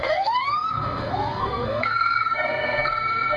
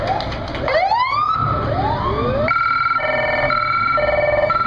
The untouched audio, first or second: second